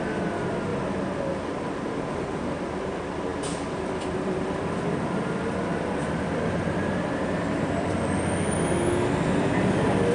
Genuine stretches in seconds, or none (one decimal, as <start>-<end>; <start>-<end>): 0.0-0.7; 1.2-3.3; 7.9-10.1